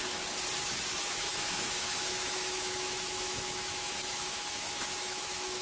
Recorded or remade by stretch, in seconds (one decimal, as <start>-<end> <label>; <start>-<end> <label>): 0.0-0.6 recorded; 0.6-5.6 remade